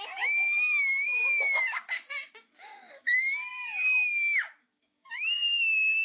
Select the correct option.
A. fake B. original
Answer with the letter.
A